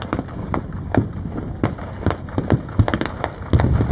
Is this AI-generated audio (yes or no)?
no